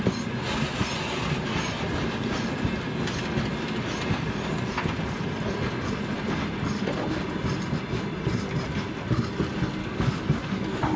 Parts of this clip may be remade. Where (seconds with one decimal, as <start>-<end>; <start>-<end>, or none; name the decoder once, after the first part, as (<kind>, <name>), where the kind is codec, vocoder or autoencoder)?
9.8-10.6 (codec, DAC)